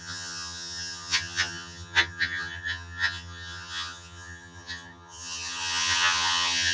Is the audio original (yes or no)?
no